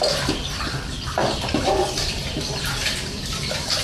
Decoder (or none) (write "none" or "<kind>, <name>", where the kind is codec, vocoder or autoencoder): vocoder, BigVGAN v2